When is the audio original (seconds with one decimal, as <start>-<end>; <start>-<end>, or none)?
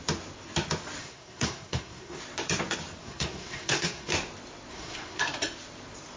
0.0-1.0; 2.2-3.0; 4.1-4.7; 5.2-6.2